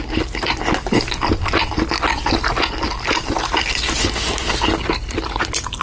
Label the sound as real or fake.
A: real